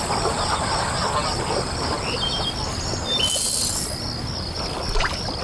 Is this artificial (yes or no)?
no